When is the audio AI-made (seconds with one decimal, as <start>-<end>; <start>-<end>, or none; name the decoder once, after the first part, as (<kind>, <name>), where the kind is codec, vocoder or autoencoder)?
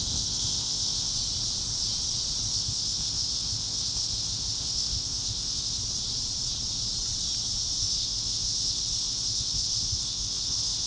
0.0-1.1 (codec, ZipCodec); 2.5-5.8; 7.8-10.9